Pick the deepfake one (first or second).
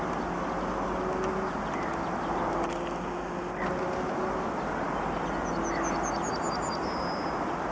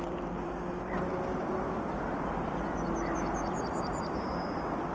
second